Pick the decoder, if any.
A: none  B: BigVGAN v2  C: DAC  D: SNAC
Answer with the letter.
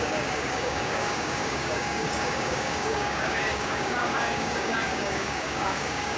C